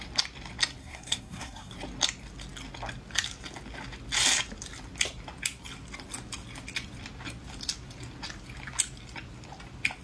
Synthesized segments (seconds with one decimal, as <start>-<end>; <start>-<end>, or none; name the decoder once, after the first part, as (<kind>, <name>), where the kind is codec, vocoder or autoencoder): 0.8-1.7 (codec, SNAC)